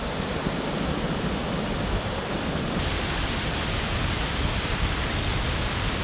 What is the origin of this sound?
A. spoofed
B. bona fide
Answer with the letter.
A